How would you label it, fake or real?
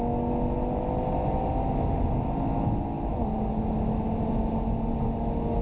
real